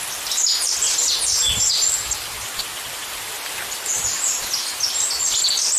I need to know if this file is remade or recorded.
recorded